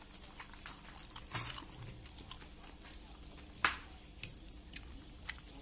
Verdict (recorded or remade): remade